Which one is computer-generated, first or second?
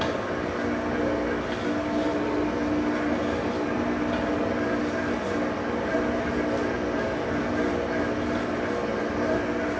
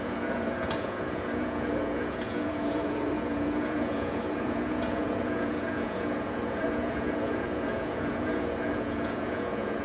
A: second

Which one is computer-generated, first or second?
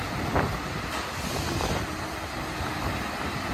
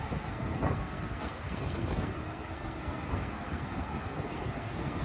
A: second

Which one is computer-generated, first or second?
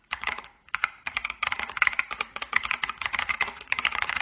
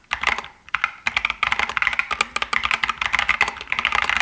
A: first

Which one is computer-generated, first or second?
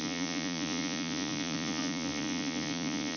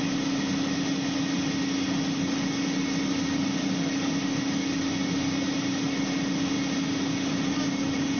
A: first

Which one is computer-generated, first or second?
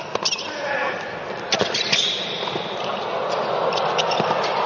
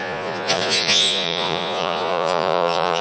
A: second